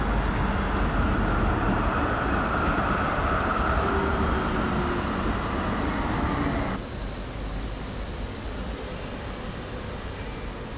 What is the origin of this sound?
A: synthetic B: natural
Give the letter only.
B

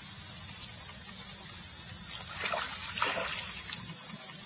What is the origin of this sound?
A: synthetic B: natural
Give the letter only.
B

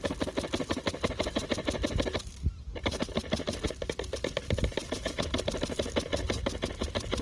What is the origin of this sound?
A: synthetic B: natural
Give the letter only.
B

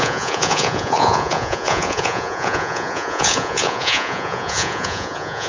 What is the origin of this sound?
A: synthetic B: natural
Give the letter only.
A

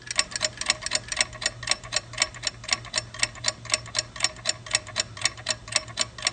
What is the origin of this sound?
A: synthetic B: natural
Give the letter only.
B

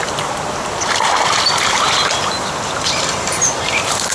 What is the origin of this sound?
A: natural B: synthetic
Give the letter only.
A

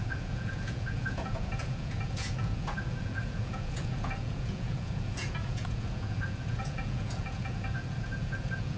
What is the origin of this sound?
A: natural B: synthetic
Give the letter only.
B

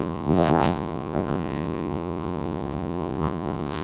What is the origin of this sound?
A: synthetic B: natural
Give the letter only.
A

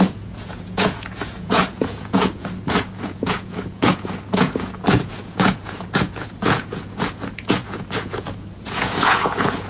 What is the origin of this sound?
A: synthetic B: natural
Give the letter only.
A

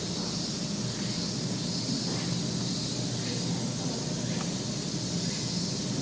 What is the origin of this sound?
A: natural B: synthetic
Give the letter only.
A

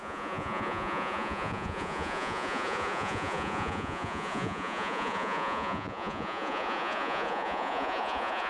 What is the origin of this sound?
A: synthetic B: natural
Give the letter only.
A